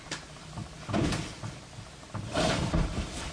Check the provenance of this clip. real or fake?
fake